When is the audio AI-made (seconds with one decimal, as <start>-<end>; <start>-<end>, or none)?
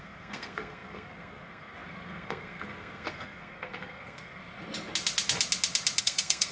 0.0-4.4; 6.0-6.5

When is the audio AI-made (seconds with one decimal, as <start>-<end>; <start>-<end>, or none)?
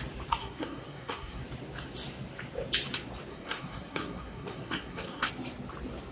0.4-1.4; 3.3-5.3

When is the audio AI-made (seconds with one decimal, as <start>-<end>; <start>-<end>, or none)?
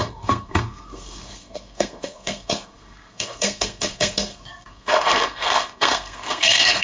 0.0-6.8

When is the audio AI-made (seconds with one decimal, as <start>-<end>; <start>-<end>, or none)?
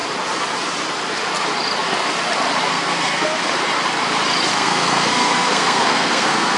2.7-3.4; 4.5-6.6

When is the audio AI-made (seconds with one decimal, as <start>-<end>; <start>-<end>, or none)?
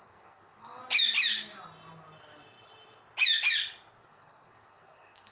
0.0-0.8; 4.0-5.3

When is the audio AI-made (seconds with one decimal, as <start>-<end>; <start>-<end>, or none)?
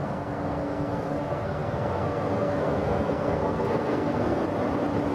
0.0-4.4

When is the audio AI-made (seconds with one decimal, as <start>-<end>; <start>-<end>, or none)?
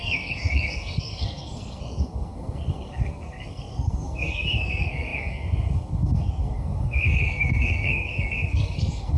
0.0-9.2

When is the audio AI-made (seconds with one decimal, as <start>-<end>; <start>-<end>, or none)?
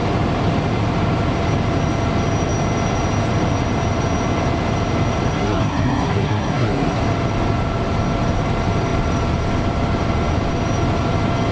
5.3-7.0